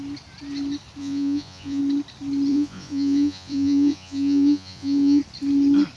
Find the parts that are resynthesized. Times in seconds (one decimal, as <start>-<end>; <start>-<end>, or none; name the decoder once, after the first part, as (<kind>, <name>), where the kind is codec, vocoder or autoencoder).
1.0-1.8 (vocoder, Vocos); 2.5-5.2